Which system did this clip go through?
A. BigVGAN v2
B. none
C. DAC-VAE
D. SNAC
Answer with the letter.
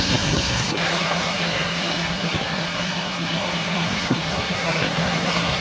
D